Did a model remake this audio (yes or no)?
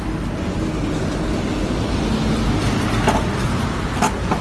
no